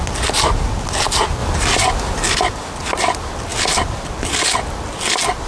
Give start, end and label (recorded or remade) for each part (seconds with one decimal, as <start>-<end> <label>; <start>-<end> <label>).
0.0-5.5 recorded